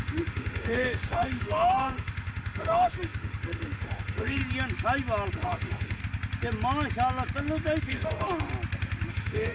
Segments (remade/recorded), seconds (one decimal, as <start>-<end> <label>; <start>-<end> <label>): 0.0-4.4 remade; 4.4-5.3 recorded; 5.3-6.0 remade; 6.0-7.8 recorded; 7.8-8.5 remade; 8.5-9.1 recorded; 9.1-9.5 remade